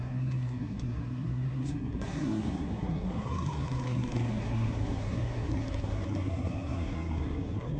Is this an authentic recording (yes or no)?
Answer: no